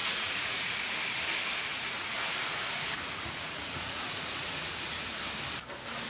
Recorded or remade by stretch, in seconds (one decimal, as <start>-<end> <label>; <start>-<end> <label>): 0.0-0.9 remade; 0.9-1.7 recorded; 1.7-5.2 remade; 5.2-6.1 recorded

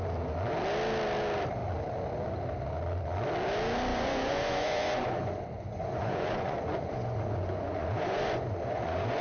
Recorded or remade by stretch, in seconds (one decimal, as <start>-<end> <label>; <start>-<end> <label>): 0.0-3.9 recorded; 3.9-9.2 remade

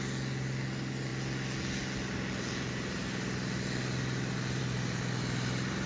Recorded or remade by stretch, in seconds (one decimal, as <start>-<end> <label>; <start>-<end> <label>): 0.0-5.9 recorded

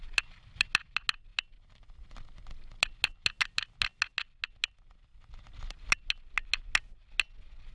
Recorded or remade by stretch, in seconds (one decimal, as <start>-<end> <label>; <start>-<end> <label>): 0.0-7.7 recorded

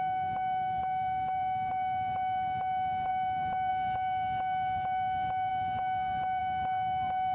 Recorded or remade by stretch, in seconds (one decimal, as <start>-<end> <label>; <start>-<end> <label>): 0.0-0.8 recorded; 0.8-1.7 remade; 1.7-7.3 recorded

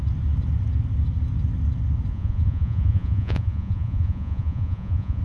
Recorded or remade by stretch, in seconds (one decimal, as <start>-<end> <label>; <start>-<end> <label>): 0.0-2.1 recorded; 2.1-5.2 remade

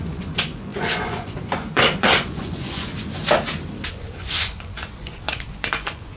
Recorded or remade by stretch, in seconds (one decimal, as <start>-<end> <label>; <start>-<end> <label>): 0.0-2.9 remade; 2.9-3.9 recorded; 3.9-6.2 remade